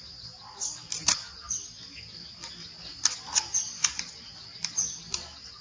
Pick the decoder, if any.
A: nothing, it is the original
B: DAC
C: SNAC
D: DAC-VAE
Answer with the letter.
A